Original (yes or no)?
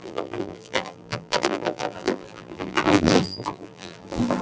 no